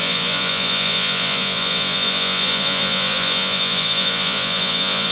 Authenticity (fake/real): fake